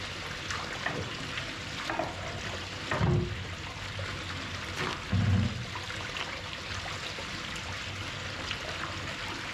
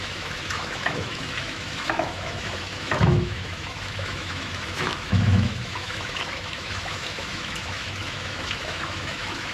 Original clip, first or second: first